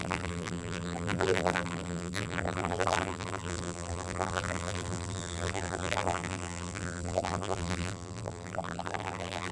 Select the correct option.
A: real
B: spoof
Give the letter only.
B